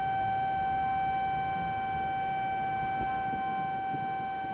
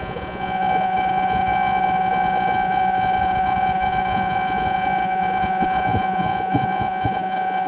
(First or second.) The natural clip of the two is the first